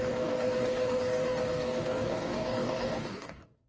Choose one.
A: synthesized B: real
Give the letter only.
A